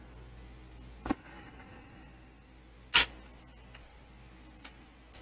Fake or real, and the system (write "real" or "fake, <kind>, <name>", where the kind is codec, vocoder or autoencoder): real